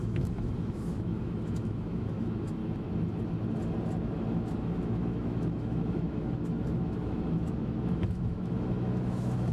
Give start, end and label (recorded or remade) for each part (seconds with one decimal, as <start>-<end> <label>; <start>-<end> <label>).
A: 0.0-2.6 remade; 2.6-4.0 recorded; 4.0-9.5 remade